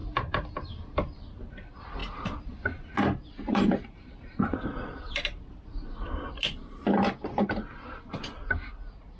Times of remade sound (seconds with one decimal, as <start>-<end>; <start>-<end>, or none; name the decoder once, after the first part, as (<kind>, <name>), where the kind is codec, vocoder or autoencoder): 2.0-6.2 (vocoder, BigVGAN v2)